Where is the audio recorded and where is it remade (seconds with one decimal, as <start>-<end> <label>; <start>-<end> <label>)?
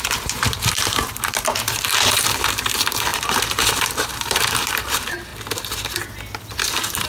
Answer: 0.0-5.3 remade; 5.3-6.4 recorded; 6.4-7.1 remade